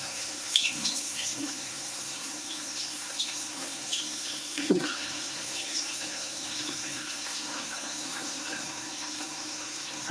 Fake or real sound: fake